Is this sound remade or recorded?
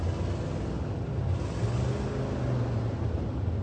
recorded